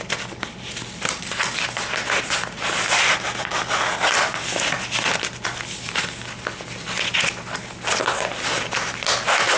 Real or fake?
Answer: real